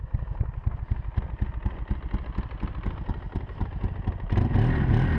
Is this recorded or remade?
recorded